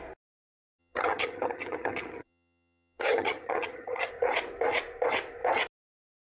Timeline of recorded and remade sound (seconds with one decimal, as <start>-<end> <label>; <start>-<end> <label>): 0.0-0.8 recorded; 0.8-4.1 remade; 4.1-6.4 recorded